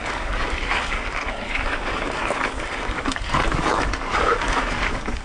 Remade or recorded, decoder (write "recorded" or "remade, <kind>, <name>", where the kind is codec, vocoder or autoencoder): remade, codec, DAC